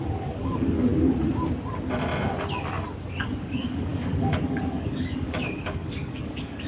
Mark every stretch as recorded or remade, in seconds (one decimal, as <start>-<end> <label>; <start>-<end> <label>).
0.0-0.9 remade; 0.9-3.0 recorded; 3.0-6.7 remade